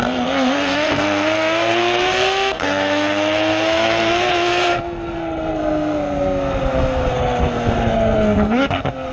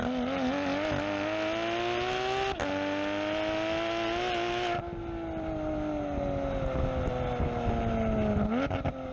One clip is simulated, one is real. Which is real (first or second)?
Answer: second